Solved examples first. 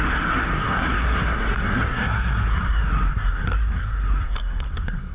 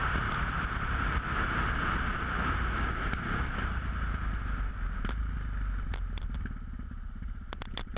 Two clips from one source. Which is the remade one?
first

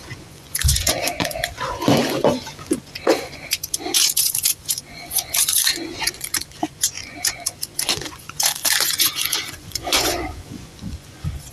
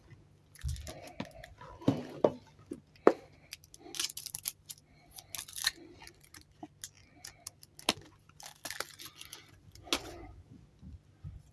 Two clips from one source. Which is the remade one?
first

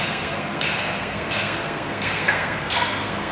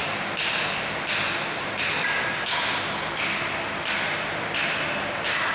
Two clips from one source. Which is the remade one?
first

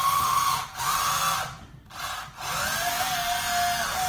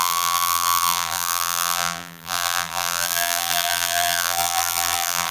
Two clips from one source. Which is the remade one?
second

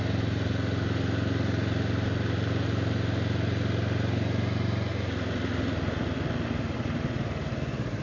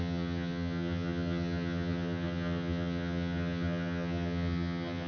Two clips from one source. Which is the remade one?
second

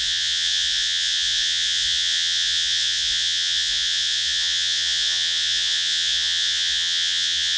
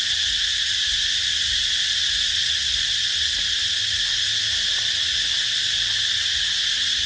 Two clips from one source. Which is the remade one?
first